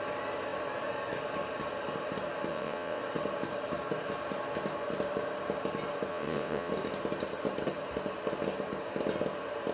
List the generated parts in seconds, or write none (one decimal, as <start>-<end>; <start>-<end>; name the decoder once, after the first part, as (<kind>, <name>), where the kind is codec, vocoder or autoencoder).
2.5-3.0 (vocoder, WaveNeXt); 6.1-6.7